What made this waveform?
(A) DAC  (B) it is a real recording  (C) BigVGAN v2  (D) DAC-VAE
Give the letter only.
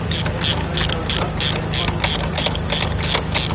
B